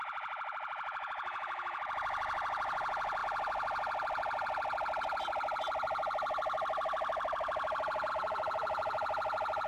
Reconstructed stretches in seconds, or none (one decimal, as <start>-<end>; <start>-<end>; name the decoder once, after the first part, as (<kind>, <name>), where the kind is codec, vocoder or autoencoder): 0.0-9.7 (vocoder, Vocos)